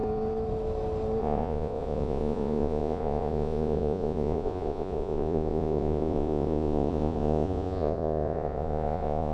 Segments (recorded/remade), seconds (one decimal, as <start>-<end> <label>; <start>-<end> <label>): 0.0-1.2 recorded; 1.2-9.3 remade